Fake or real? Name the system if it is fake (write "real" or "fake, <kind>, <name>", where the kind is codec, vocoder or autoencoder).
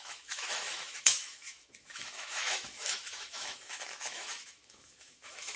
fake, autoencoder, DAC-VAE